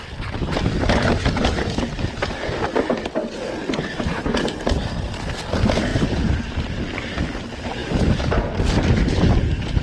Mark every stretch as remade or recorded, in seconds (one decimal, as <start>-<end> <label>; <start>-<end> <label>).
0.0-5.9 recorded; 5.9-6.7 remade; 6.7-9.8 recorded

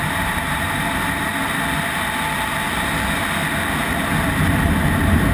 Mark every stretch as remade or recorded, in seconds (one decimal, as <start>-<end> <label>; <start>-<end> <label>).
0.0-1.3 remade; 1.3-4.5 recorded; 4.5-5.3 remade

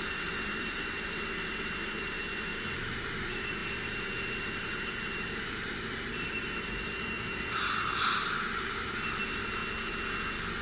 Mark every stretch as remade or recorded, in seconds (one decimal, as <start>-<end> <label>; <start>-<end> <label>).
0.0-9.6 remade; 9.6-10.6 recorded

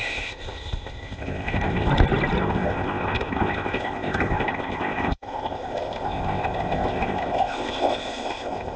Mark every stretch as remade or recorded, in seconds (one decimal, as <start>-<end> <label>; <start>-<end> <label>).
0.0-1.9 remade; 1.9-2.4 recorded; 2.4-8.8 remade